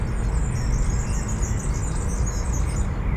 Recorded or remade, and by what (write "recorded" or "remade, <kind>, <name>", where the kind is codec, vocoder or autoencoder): recorded